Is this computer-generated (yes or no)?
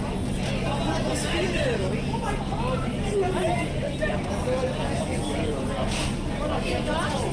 no